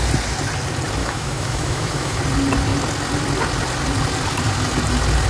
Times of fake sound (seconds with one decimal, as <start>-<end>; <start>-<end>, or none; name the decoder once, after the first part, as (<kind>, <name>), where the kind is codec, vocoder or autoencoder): 1.0-2.2 (autoencoder, DAC-VAE)